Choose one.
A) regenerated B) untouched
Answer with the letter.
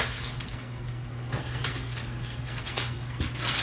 A